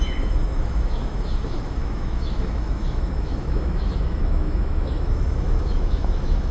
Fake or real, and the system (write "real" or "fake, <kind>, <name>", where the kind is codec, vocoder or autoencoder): fake, autoencoder, DAC-VAE